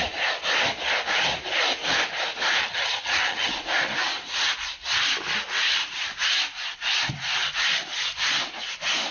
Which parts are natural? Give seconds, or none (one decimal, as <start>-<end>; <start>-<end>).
0.0-2.6; 3.5-9.1